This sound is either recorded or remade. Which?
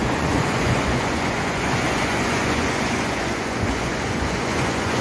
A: remade